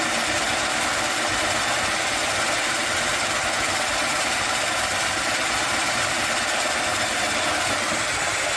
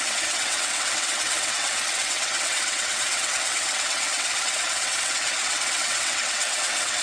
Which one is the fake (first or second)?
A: second